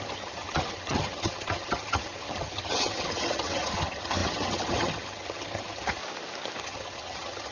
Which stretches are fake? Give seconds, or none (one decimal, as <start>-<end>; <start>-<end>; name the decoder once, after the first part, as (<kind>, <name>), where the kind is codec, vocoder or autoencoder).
0.0-6.0 (vocoder, HiFi-GAN); 6.6-7.5